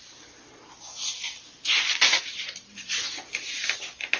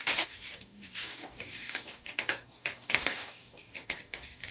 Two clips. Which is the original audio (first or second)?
first